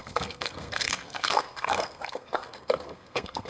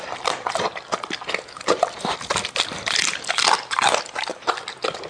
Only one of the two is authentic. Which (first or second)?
second